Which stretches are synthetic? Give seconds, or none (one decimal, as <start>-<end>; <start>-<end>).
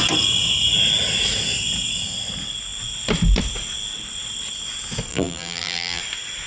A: 5.1-6.0